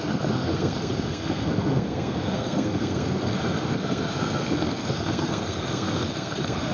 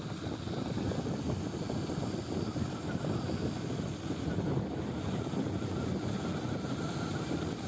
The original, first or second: second